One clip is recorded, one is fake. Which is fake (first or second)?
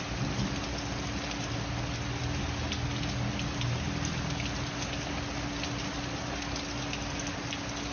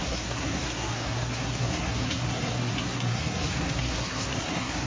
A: second